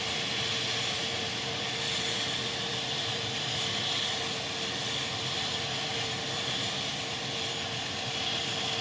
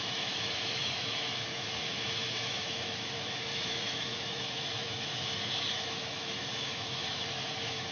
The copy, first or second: second